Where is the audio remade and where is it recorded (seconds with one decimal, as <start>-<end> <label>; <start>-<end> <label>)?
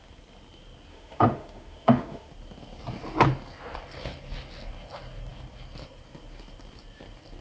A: 0.0-0.9 recorded; 0.9-2.3 remade; 2.3-7.4 recorded